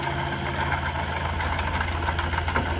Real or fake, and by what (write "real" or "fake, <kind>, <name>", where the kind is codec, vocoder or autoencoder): real